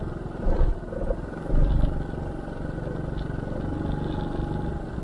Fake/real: real